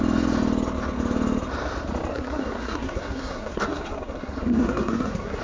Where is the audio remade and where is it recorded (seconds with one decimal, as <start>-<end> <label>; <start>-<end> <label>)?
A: 0.0-2.1 recorded; 2.1-5.4 remade